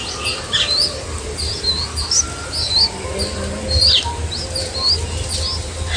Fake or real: real